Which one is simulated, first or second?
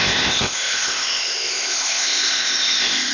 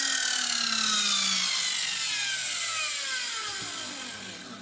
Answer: first